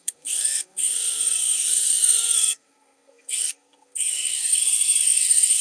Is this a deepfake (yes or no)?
yes